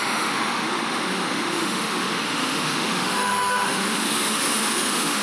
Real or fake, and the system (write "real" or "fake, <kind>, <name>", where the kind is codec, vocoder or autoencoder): fake, autoencoder, DAC-VAE